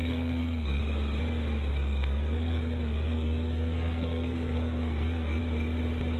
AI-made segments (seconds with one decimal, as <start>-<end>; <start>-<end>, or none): 0.0-0.8; 1.7-5.4